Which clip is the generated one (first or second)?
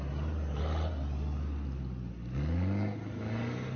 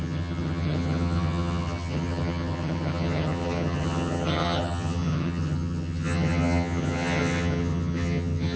second